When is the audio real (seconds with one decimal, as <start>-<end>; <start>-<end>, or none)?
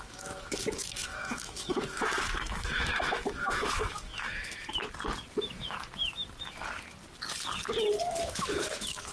4.8-8.0